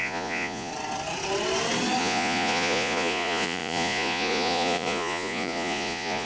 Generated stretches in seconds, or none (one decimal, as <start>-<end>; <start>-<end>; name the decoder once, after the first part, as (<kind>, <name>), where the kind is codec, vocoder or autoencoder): 0.0-0.7 (vocoder, Vocos); 2.0-6.3